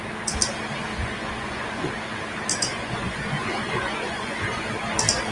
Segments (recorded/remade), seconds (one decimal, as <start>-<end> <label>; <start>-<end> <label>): 0.0-0.9 recorded; 0.9-1.9 remade; 1.9-2.5 recorded; 2.5-4.6 remade; 4.6-5.3 recorded